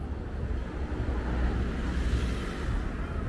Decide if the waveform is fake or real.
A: real